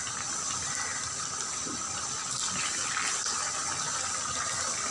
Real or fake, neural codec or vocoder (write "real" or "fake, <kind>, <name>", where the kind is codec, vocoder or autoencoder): real